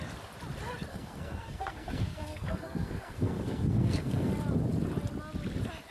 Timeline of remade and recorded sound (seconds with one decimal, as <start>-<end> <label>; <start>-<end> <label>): 0.0-0.9 recorded; 0.9-4.3 remade; 4.3-5.9 recorded